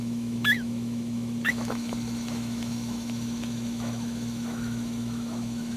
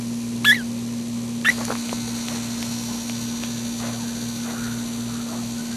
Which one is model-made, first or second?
first